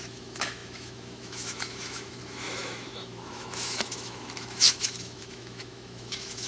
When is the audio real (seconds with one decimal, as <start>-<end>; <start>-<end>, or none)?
none